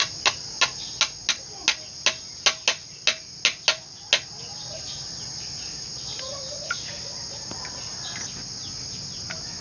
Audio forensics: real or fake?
real